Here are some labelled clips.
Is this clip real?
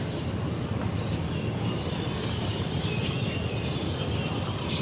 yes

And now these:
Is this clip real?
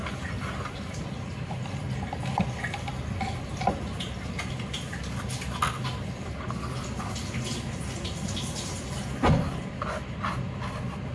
yes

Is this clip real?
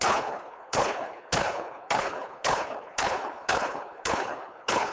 no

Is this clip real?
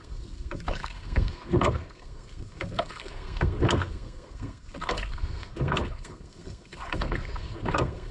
no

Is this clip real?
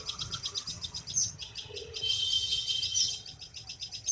no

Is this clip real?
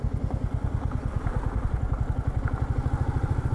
yes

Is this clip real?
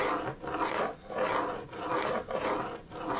yes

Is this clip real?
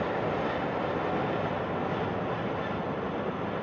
yes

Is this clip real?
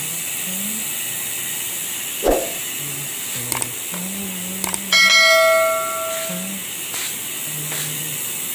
yes